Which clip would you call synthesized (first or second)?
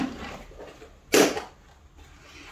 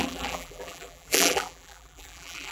second